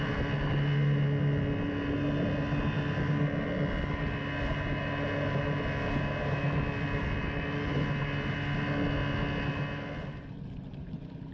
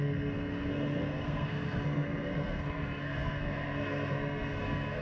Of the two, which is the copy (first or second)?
second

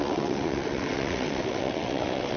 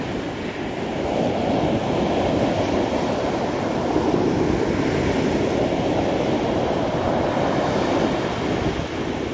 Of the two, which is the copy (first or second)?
first